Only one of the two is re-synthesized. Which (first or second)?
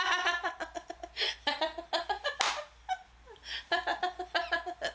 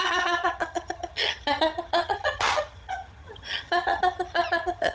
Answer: second